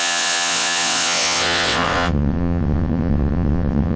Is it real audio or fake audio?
fake